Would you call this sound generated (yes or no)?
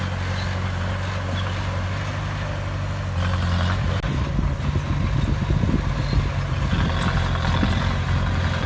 no